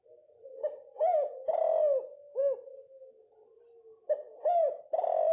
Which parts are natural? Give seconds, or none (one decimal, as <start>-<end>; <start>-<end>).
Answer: 0.0-5.3